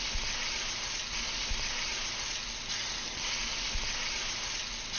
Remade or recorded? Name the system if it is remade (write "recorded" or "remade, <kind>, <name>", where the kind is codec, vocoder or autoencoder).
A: recorded